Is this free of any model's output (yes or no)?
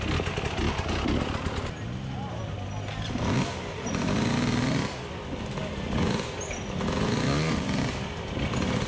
yes